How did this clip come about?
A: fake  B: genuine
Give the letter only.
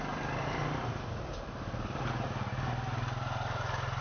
B